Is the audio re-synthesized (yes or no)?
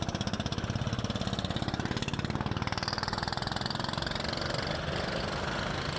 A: no